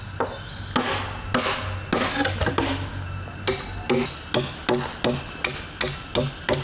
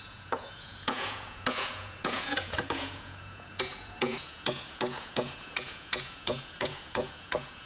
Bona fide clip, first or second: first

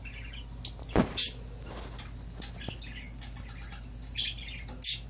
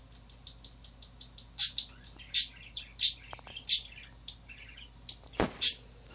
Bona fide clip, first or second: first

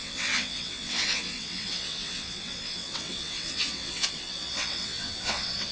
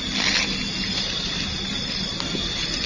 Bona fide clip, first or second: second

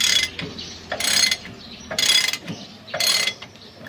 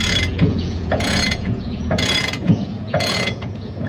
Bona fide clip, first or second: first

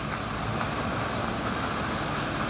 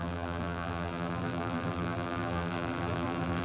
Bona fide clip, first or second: first